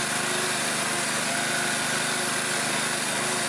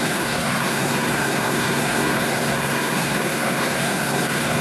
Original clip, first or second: first